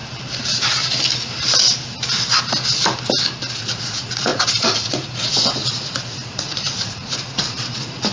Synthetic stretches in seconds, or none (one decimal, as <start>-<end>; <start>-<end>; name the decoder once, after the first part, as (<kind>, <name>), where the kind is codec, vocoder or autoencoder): 3.5-8.1 (vocoder, Vocos)